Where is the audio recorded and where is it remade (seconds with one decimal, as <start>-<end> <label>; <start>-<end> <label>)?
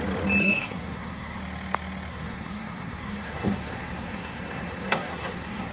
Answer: 0.0-0.4 recorded; 0.4-1.4 remade; 1.4-2.1 recorded; 2.1-5.7 remade